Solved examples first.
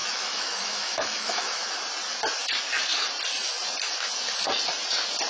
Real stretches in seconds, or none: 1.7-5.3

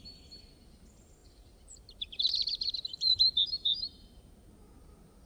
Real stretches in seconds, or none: 0.0-1.2; 4.2-5.3

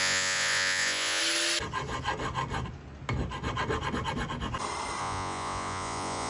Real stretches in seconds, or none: 1.2-5.0

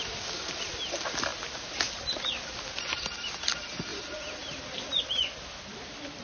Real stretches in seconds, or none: 0.0-3.9; 5.0-6.2

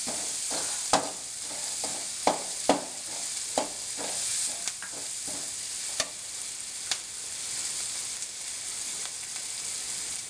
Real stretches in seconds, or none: 0.0-10.3